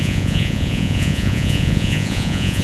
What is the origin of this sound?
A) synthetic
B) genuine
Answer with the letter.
A